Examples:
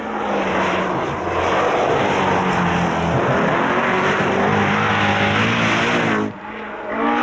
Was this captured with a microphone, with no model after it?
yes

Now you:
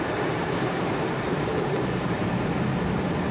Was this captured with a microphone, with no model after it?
no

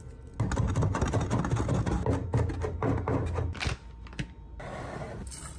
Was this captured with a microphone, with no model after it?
yes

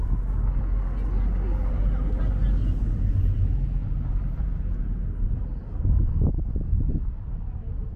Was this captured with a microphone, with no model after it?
yes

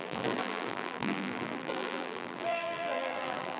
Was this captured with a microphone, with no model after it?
no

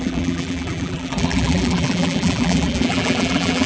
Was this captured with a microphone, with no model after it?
no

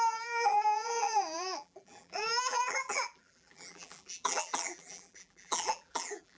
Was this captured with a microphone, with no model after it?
no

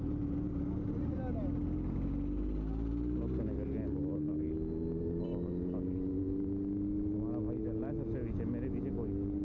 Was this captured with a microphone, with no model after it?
yes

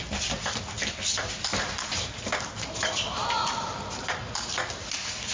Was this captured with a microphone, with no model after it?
no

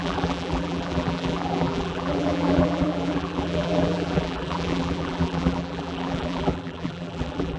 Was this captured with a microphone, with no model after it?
no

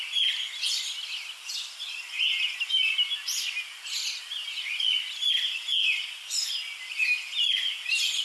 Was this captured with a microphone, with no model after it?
yes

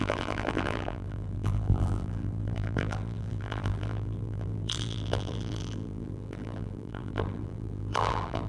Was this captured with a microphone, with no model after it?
no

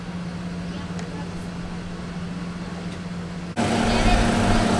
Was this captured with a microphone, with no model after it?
yes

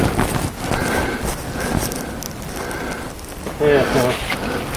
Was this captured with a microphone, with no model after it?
yes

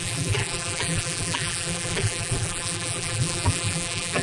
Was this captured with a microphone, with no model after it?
no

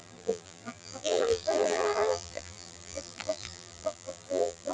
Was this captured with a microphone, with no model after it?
no